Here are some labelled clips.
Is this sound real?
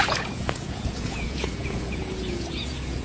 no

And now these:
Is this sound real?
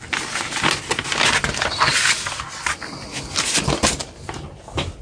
yes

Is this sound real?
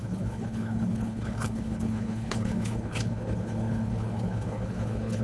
no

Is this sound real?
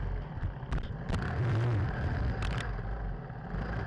yes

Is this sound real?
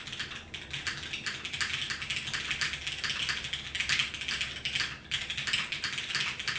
yes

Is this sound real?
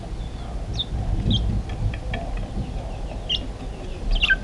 yes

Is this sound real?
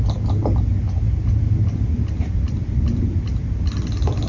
yes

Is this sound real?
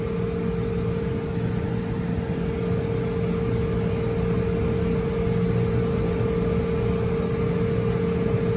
yes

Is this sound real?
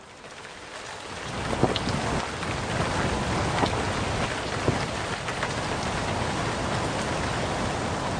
yes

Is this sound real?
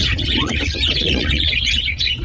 no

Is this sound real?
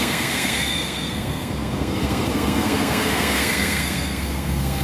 no